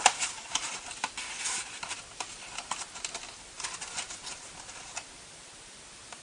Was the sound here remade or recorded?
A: recorded